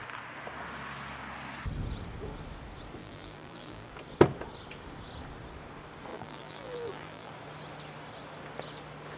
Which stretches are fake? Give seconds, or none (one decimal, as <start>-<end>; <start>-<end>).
3.0-3.9; 6.1-7.3